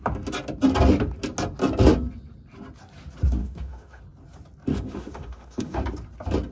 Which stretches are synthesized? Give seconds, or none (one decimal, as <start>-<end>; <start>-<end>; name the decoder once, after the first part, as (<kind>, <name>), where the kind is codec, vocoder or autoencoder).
3.4-4.0 (autoencoder, DAC-VAE); 4.7-5.8